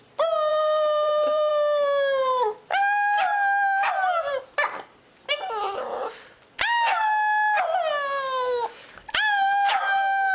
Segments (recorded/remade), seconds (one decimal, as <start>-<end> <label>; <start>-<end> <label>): 0.0-0.5 recorded; 0.5-1.5 remade; 1.5-10.3 recorded